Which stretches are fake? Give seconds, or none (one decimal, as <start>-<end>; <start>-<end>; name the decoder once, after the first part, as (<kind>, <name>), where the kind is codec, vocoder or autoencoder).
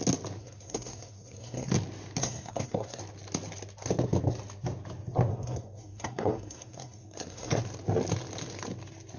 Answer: 0.4-1.7 (codec, SNAC); 2.2-3.0; 5.3-7.6